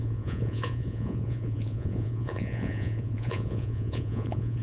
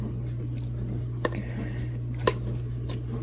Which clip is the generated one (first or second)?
first